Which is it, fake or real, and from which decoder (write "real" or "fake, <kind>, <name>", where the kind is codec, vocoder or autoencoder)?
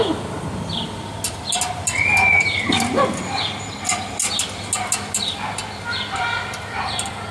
real